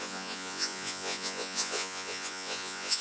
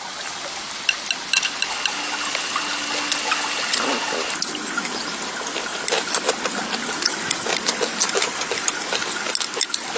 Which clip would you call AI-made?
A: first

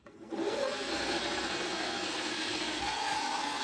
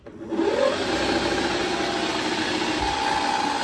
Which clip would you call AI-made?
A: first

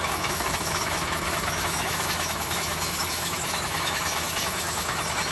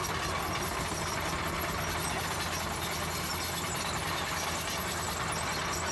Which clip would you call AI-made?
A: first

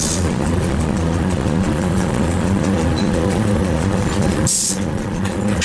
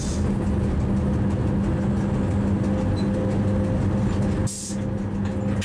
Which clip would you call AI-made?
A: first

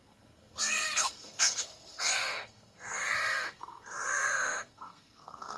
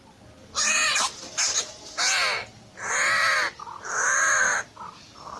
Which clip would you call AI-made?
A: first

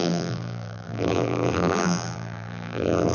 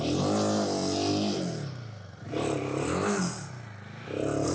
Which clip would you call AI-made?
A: first